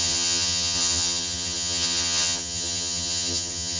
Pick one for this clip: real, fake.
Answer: fake